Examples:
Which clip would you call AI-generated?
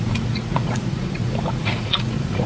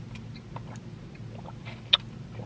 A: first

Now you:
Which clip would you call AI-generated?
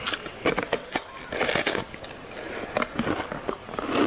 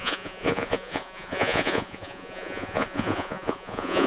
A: second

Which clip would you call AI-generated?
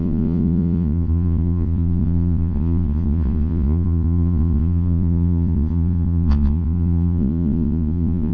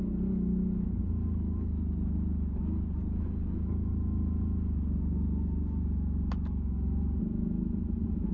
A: first